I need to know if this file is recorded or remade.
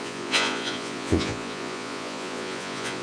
remade